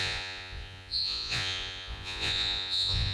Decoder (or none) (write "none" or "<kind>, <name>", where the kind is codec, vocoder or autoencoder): vocoder, Vocos